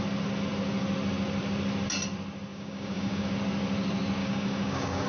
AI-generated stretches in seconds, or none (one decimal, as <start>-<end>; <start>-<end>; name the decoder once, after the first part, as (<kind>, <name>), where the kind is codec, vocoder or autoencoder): 2.5-3.2 (codec, DAC); 4.2-5.1